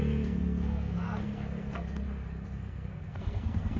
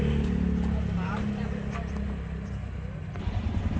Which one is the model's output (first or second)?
first